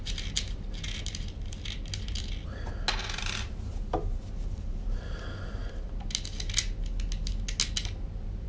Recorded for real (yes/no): yes